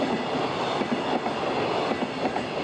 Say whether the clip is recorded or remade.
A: recorded